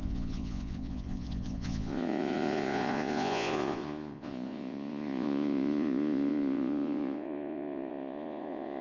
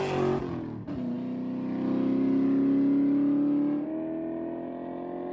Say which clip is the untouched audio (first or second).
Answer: second